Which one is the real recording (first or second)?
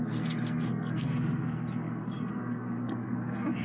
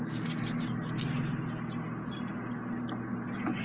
second